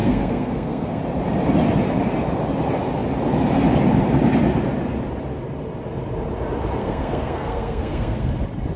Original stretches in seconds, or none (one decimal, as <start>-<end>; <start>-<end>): 1.0-6.8; 8.3-8.8